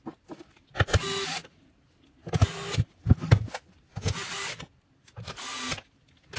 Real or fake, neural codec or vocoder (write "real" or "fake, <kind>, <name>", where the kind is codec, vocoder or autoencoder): real